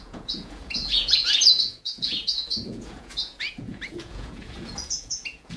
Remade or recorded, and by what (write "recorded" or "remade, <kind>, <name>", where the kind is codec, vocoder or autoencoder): remade, vocoder, Vocos